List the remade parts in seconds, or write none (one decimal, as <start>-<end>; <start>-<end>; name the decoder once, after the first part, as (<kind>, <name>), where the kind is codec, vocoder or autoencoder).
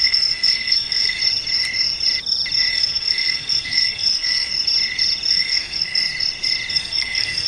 0.0-1.2 (codec, SNAC); 2.7-4.5; 5.3-6.0; 6.7-7.5